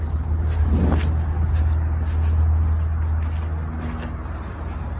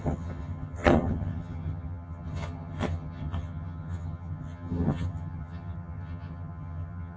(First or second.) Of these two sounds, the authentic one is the first